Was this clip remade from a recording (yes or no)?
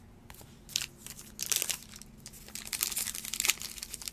no